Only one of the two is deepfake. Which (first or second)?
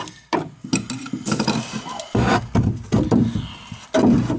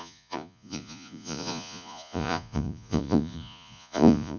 second